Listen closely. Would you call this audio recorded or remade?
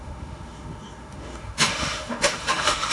remade